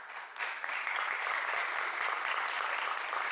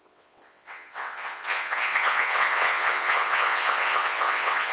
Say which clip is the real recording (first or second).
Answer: first